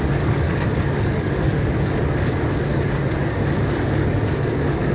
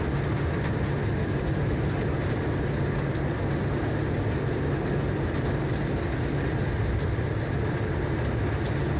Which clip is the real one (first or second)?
second